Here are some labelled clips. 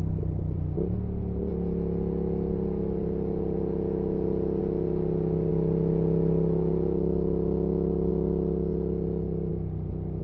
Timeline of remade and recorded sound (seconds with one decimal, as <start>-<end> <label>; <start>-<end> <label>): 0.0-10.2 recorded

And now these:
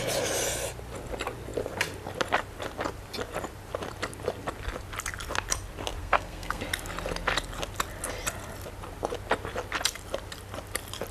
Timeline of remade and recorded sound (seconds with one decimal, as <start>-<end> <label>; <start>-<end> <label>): 0.0-6.0 recorded; 6.0-6.6 remade; 6.6-11.1 recorded

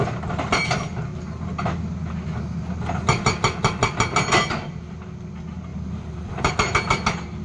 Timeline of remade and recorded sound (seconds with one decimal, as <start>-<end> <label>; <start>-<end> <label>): 0.0-5.7 recorded; 5.7-6.5 remade; 6.5-7.4 recorded